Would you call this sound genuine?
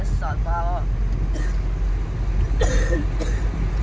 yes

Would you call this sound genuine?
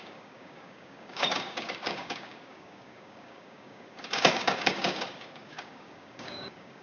no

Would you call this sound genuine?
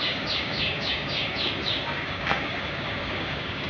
no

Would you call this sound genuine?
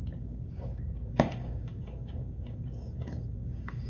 no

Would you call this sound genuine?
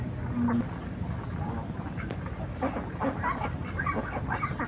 yes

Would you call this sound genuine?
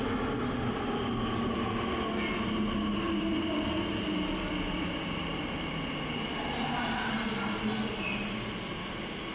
yes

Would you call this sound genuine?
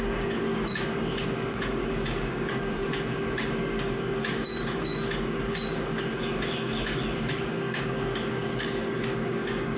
no